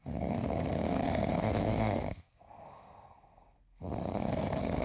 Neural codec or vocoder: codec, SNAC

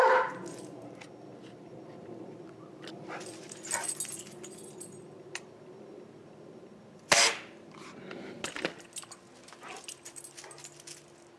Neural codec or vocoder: none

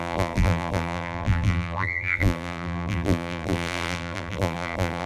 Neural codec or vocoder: vocoder, BigVGAN v2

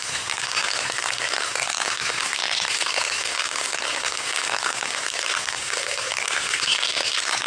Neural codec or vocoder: codec, SNAC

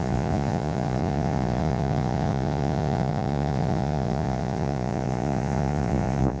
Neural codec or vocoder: vocoder, Vocos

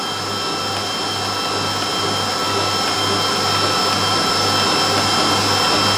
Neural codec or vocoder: none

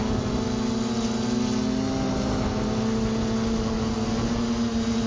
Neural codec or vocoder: none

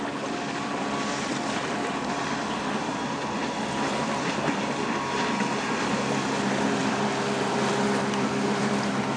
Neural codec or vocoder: none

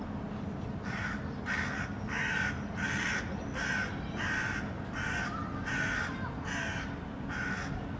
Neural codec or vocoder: none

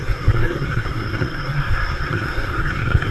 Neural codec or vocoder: codec, SNAC